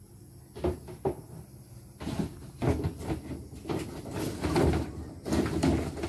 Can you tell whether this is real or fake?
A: real